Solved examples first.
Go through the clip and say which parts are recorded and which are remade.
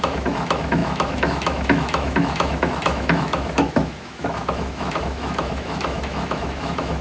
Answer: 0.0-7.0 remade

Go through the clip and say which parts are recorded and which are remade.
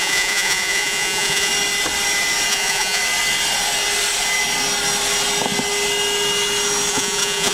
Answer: 0.0-1.5 remade; 1.5-2.5 recorded; 2.5-3.0 remade; 3.0-6.9 recorded; 6.9-7.5 remade